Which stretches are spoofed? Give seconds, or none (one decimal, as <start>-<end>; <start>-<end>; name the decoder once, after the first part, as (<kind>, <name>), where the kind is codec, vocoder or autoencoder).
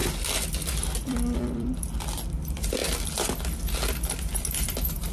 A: 1.0-2.8 (vocoder, BigVGAN v2); 4.3-5.1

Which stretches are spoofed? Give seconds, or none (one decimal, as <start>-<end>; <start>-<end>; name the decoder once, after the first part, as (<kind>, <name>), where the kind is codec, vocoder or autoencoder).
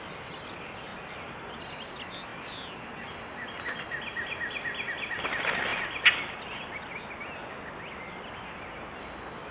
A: none